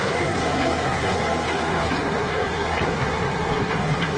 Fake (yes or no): yes